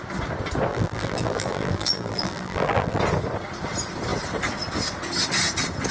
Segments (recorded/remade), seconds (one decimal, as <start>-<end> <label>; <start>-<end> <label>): 0.0-0.7 recorded; 0.7-3.0 remade; 3.0-5.9 recorded